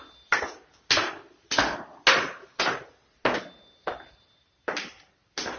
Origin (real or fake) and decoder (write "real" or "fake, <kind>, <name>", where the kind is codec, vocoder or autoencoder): real